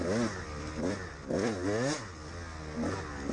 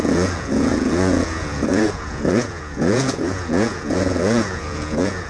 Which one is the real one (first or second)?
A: first